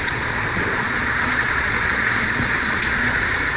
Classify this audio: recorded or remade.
remade